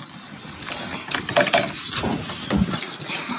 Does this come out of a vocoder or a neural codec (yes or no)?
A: no